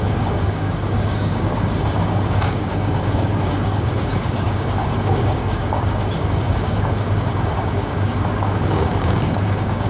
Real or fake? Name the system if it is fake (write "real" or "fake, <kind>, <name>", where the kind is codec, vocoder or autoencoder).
fake, codec, DAC